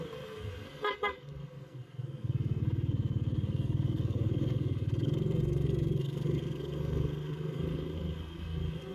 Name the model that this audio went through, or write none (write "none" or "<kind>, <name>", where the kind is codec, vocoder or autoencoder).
codec, SNAC